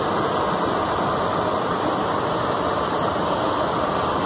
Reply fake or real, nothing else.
real